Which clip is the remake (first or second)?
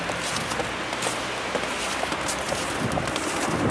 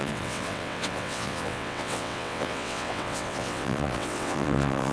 second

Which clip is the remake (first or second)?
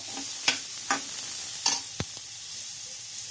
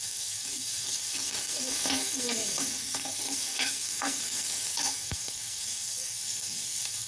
second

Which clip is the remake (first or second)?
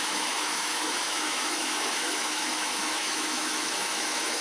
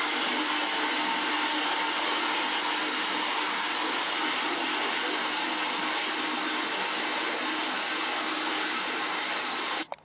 first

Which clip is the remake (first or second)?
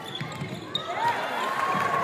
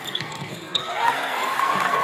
second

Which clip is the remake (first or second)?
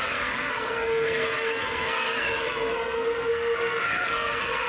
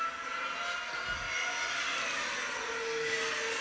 first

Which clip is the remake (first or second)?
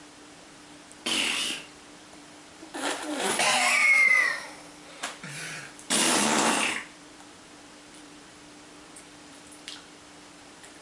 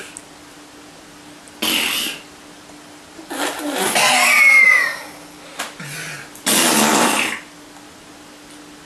first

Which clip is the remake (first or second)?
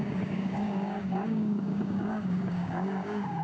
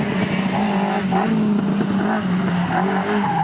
first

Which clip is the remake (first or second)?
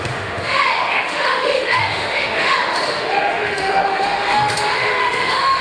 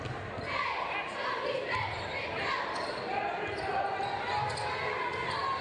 first